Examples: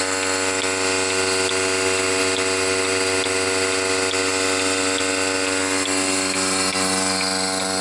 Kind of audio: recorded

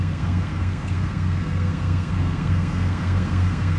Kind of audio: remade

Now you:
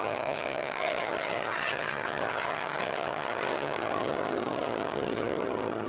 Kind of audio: remade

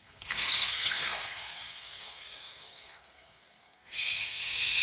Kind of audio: remade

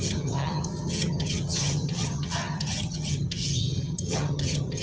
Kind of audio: remade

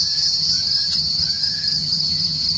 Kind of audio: remade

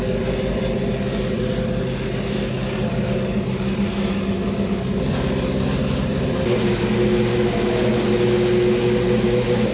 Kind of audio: recorded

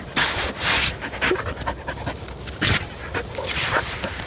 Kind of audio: recorded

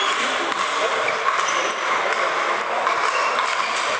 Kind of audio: recorded